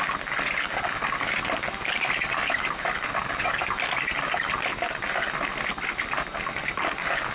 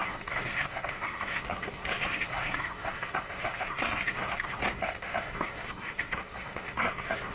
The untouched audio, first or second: first